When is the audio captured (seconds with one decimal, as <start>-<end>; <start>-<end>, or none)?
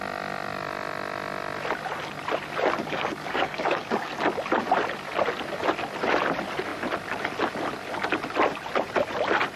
0.0-2.8; 4.1-9.6